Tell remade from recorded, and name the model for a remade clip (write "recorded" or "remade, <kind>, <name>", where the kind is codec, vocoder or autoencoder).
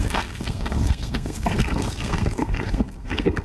remade, codec, SNAC